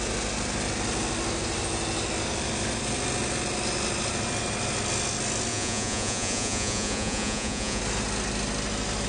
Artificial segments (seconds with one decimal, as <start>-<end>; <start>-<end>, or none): 5.5-7.8